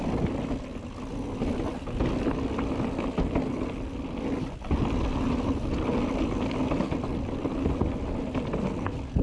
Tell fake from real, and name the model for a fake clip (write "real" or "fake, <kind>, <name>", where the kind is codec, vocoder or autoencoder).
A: real